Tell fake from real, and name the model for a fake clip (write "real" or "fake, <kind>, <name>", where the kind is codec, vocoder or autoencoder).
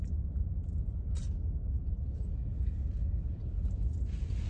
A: real